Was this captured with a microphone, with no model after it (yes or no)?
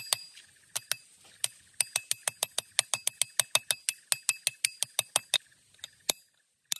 yes